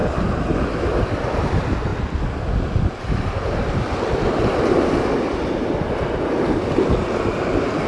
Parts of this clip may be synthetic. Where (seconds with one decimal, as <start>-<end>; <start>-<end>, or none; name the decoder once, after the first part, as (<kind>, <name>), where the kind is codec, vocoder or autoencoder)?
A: none